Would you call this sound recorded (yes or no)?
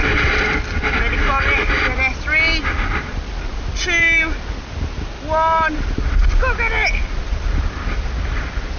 yes